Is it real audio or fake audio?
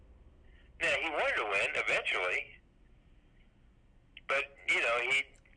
real